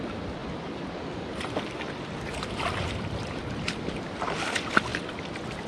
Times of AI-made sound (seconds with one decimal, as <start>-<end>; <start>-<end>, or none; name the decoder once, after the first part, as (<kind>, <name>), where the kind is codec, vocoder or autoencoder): none

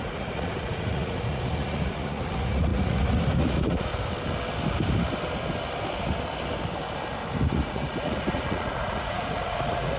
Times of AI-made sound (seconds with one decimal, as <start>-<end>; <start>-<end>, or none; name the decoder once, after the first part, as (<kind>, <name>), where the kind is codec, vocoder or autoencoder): 0.0-3.9 (vocoder, Vocos); 7.4-10.0

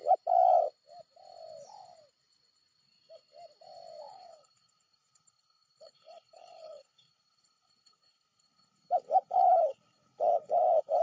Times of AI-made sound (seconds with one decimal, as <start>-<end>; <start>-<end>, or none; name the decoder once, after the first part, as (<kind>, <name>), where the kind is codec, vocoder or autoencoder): 4.1-11.0 (codec, HILCodec)

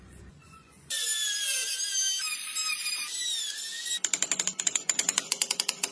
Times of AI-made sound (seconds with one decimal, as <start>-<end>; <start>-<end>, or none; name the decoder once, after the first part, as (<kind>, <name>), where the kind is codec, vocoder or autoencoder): 0.0-1.1 (vocoder, Vocos); 4.6-5.9

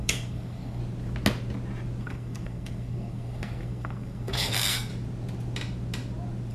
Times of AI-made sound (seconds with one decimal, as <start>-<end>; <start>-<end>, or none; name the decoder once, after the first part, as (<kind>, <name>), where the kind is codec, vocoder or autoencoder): 0.0-0.8 (codec, SNAC); 2.0-4.9